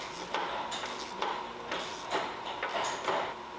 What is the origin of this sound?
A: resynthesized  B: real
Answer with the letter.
B